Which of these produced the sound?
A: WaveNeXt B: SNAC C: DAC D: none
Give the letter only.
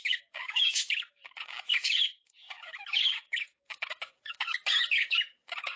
C